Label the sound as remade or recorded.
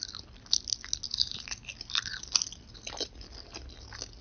recorded